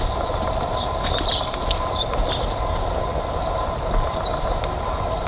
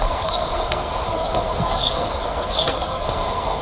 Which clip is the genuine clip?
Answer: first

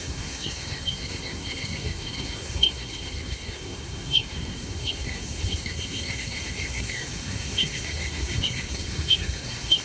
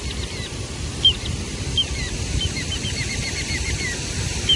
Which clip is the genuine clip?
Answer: second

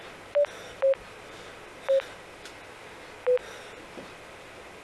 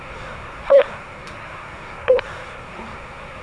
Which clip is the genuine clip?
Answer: first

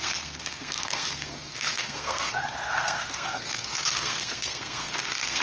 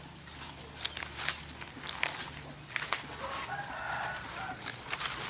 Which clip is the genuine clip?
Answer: second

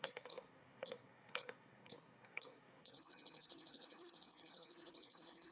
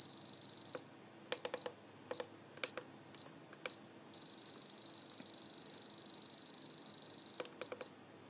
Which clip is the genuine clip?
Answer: second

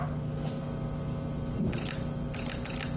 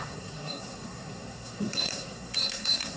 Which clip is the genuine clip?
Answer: first